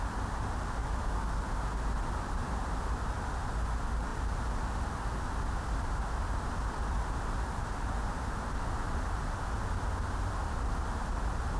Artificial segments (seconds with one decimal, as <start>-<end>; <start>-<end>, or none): 0.8-1.4